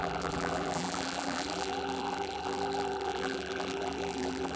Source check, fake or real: fake